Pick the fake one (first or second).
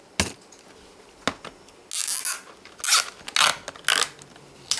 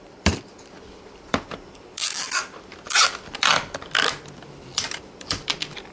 second